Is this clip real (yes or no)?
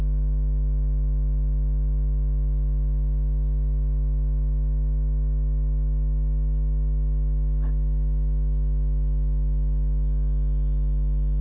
yes